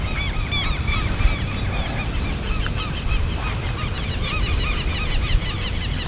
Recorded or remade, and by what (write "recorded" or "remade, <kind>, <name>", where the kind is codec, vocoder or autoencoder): recorded